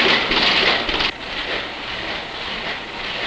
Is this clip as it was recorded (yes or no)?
yes